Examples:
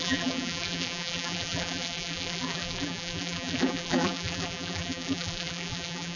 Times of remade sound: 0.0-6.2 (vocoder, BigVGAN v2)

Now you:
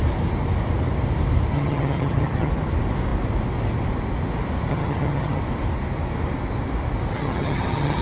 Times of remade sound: 1.5-2.5 (vocoder, HiFi-GAN); 4.7-5.4; 7.1-8.0

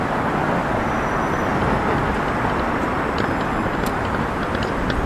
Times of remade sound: none

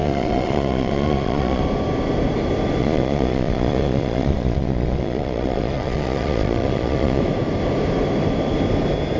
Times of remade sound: 0.0-1.6 (vocoder, Vocos); 2.8-7.2

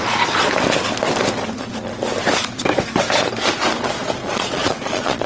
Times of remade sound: 4.2-5.3 (vocoder, Vocos)